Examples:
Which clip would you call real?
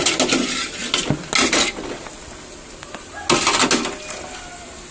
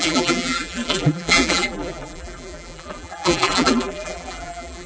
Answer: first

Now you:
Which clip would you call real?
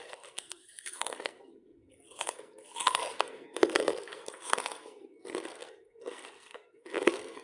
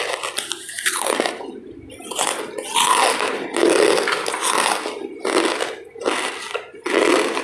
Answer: second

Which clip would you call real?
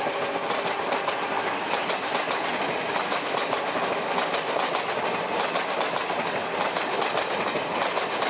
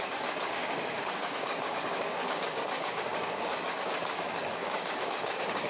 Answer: first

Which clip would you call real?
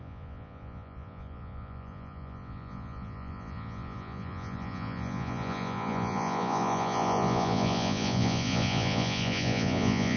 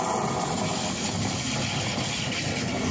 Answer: second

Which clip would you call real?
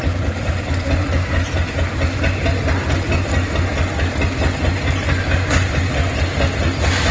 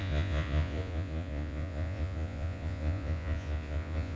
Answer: first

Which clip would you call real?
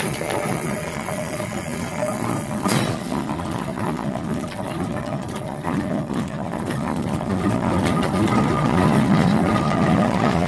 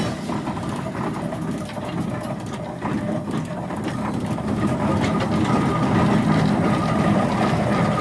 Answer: second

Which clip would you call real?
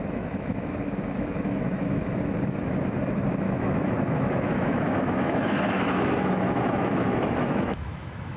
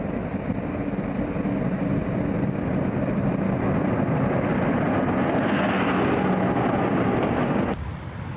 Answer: second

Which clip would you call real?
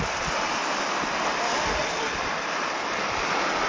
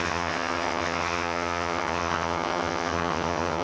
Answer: first